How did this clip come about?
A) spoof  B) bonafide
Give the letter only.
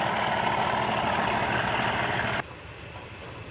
B